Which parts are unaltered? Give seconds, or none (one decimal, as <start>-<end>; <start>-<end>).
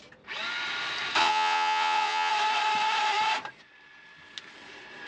0.0-1.2; 2.3-5.1